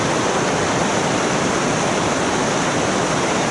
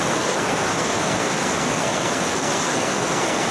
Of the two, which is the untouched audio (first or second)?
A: first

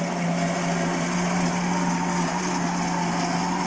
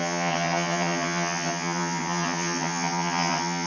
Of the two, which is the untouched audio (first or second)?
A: first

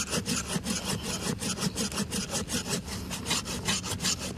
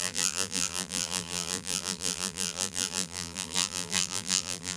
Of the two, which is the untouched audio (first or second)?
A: first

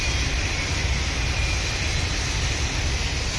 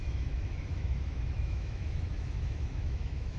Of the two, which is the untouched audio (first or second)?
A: first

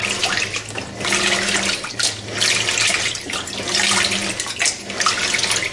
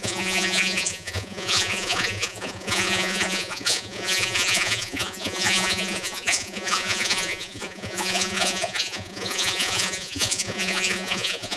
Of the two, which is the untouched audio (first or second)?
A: first